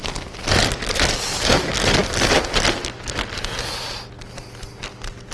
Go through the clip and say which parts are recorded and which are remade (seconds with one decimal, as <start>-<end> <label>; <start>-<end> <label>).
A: 0.0-5.3 recorded